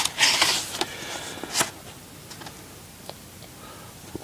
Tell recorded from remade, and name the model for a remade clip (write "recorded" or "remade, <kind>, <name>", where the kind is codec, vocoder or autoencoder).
recorded